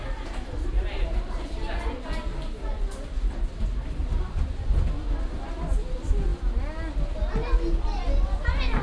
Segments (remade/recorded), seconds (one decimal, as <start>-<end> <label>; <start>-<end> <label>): 0.0-8.8 recorded